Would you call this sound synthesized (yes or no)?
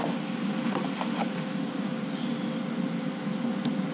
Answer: yes